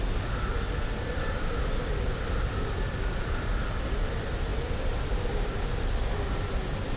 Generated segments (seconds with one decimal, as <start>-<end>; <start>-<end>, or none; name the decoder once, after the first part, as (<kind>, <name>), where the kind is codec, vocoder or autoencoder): none